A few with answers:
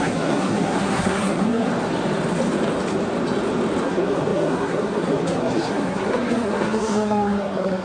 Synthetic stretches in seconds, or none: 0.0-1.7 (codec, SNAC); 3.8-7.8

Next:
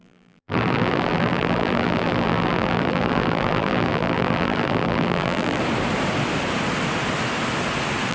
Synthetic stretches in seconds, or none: 0.0-5.6 (vocoder, BigVGAN v2)

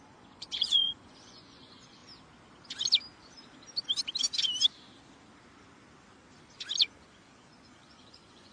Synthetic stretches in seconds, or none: 0.0-2.0 (vocoder, Vocos); 6.8-8.5

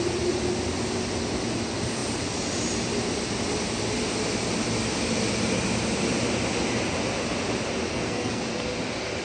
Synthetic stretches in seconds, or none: 7.9-8.4 (codec, SNAC)

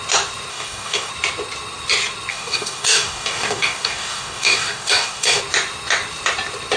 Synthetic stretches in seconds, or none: 0.5-1.1 (codec, DAC); 2.3-5.4

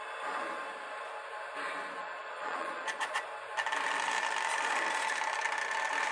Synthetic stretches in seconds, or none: 2.0-3.2 (vocoder, Vocos)

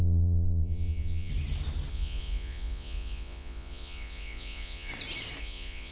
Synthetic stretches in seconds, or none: 0.0-1.3 (vocoder, Vocos); 1.9-4.9; 5.4-5.9